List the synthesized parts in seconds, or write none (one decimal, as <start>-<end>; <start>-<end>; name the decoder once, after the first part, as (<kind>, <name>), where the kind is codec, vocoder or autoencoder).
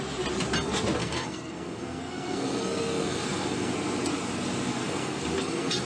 1.0-3.7 (codec, SNAC); 4.7-5.8